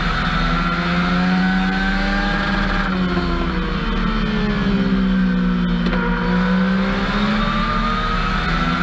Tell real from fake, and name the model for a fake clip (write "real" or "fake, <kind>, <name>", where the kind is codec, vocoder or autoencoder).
real